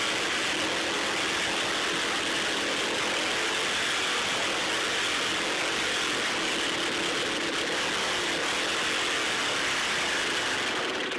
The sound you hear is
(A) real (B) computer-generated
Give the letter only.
A